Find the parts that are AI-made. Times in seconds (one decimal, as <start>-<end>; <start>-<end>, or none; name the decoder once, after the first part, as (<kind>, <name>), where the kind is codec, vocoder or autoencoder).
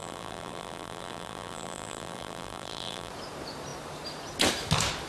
0.0-3.1 (vocoder, BigVGAN v2)